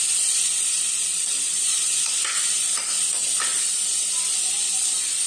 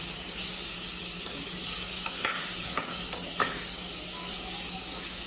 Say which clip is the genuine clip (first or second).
first